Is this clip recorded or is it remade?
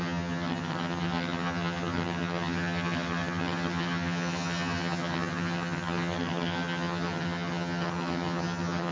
remade